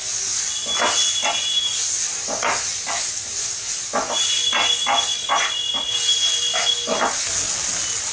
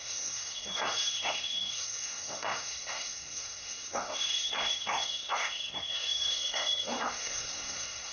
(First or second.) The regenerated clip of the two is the second